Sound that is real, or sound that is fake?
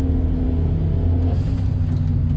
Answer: real